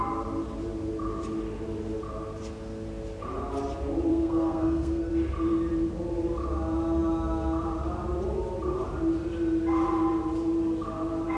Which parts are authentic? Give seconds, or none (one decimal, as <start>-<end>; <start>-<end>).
0.0-4.1; 5.1-11.4